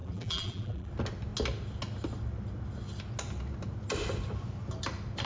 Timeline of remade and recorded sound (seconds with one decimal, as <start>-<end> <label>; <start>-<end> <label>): 0.0-0.9 remade; 0.9-5.3 recorded